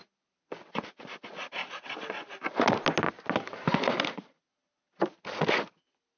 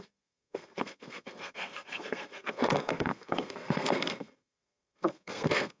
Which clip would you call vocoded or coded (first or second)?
second